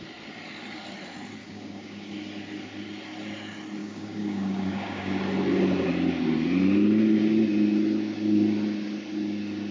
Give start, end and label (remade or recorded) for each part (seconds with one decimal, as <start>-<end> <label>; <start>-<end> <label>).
0.0-1.4 recorded; 1.4-2.1 remade; 2.1-3.8 recorded; 3.8-5.2 remade; 5.2-9.7 recorded